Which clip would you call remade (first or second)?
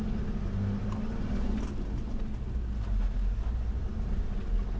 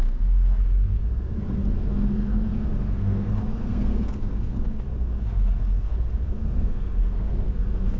second